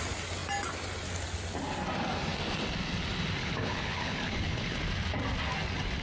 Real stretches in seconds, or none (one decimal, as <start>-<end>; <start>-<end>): 0.0-3.4; 4.8-6.0